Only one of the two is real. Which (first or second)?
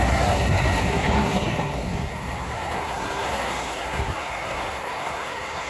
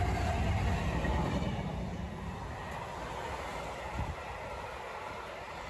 second